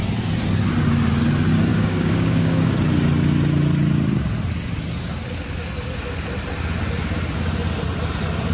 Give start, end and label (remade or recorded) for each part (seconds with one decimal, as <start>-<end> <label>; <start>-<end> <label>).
0.0-1.7 recorded; 1.7-2.7 remade; 2.7-8.5 recorded